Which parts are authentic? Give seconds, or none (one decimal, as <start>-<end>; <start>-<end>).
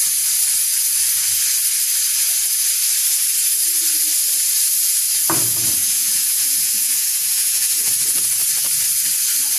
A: 0.0-5.8; 7.9-9.6